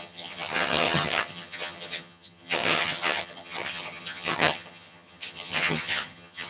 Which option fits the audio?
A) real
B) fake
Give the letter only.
B